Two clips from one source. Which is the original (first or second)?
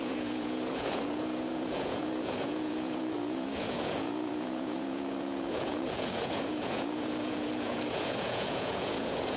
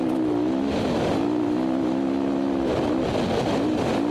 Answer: second